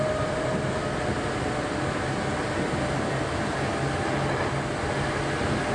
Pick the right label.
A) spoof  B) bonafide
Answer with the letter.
B